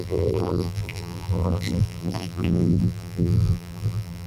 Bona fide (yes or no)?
no